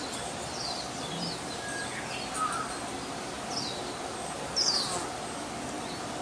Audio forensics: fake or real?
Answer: real